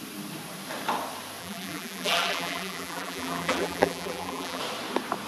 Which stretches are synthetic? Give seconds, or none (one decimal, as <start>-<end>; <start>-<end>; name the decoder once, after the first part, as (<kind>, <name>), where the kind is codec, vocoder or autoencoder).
1.4-4.6 (vocoder, BigVGAN v2)